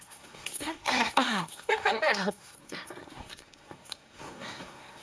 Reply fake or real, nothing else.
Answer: fake